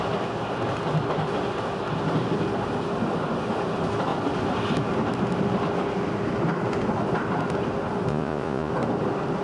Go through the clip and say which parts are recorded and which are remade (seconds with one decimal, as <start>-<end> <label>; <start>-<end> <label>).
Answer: 0.0-8.1 recorded; 8.1-8.7 remade; 8.7-9.4 recorded